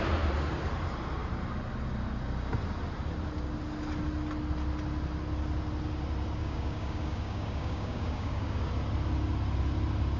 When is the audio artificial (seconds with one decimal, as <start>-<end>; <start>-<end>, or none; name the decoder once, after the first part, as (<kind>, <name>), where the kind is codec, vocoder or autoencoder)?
6.4-8.7 (codec, DAC)